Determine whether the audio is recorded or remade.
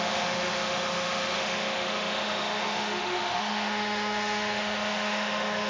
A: remade